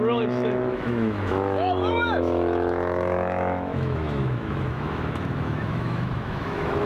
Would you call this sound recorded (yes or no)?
no